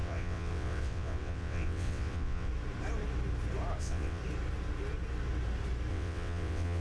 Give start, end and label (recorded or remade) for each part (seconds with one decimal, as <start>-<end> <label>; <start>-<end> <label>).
0.0-2.5 remade; 2.5-3.8 recorded; 3.8-4.2 remade; 4.2-5.9 recorded; 5.9-6.8 remade